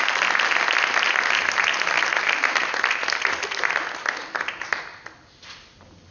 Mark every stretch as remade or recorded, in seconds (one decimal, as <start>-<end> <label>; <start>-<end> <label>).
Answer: 0.0-6.1 recorded